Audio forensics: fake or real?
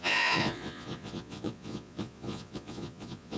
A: fake